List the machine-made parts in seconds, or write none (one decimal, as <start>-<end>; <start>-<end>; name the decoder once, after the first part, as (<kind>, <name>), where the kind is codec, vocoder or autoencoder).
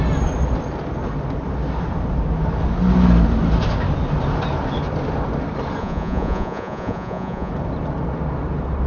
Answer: 5.8-7.5 (vocoder, Vocos)